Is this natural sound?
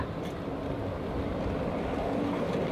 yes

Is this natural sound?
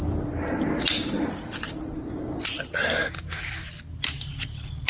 yes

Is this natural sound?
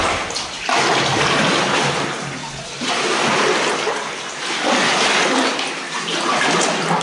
yes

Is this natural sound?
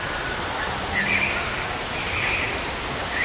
yes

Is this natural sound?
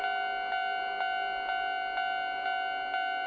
yes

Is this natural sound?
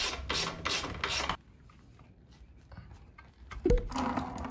yes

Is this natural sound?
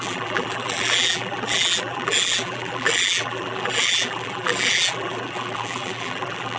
no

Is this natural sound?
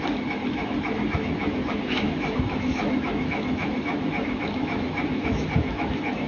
no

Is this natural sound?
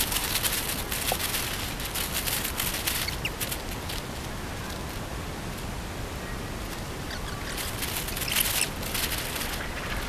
yes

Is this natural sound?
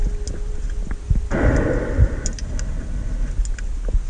yes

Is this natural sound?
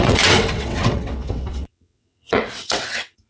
no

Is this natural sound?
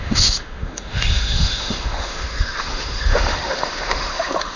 no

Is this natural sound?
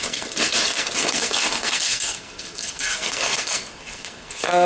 no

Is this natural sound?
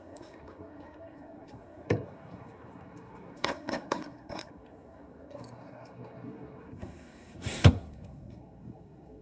no